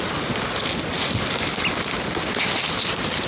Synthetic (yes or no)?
no